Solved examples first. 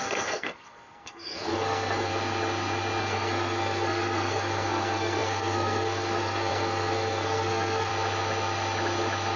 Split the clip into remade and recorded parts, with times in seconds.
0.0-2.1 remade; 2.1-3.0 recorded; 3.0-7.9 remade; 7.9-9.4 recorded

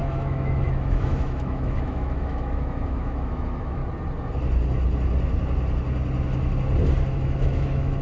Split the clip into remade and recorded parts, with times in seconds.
0.0-3.8 remade; 3.8-7.1 recorded; 7.1-8.0 remade

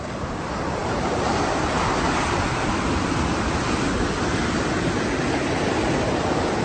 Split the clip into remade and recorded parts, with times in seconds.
0.0-6.6 recorded

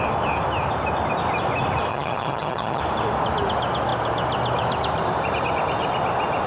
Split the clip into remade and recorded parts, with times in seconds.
0.0-1.9 recorded; 1.9-2.8 remade; 2.8-6.5 recorded

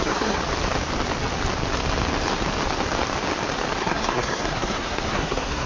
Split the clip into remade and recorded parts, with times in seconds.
0.0-0.4 remade; 0.4-3.8 recorded; 3.8-5.7 remade

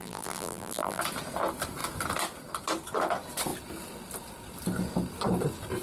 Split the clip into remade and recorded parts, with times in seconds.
0.0-1.0 remade; 1.0-5.8 recorded

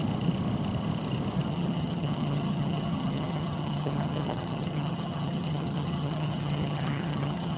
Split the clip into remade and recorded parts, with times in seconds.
0.0-1.5 recorded; 1.5-7.6 remade